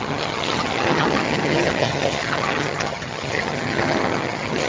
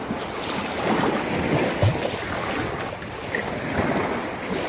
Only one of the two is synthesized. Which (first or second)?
first